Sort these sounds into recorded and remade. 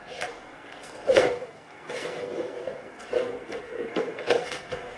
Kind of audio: remade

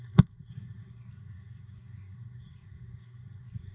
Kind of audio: remade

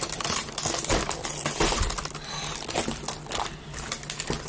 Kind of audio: recorded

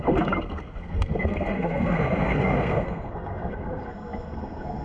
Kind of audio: remade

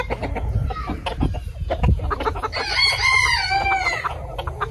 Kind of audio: recorded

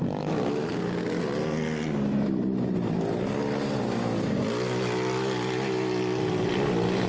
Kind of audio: recorded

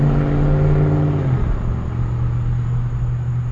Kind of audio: recorded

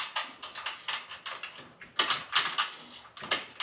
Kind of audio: recorded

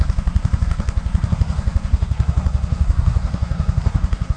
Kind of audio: remade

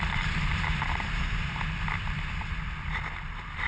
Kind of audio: recorded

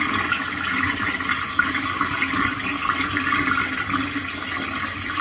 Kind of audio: recorded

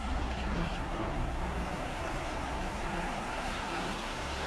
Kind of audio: remade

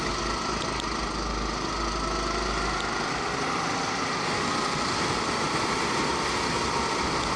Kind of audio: recorded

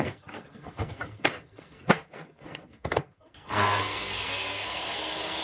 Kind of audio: remade